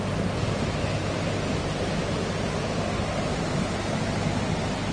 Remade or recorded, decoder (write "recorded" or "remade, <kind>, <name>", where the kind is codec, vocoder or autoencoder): recorded